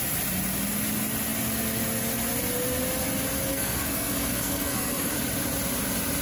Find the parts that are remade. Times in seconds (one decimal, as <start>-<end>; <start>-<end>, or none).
3.5-5.1